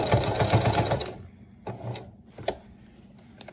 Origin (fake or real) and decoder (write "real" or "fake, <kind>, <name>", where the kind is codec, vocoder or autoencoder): real